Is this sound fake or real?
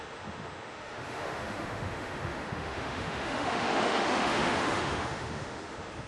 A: fake